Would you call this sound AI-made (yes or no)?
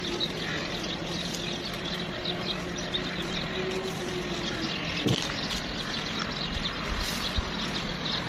no